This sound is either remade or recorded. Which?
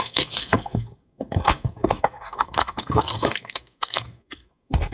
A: remade